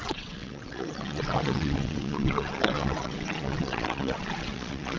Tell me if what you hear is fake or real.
fake